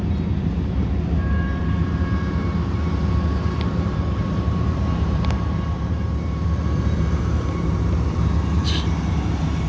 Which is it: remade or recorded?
remade